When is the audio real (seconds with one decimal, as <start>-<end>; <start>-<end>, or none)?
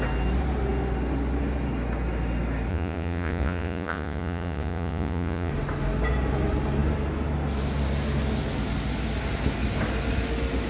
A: 0.0-2.7; 5.5-10.7